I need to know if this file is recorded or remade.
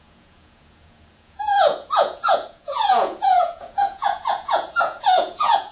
remade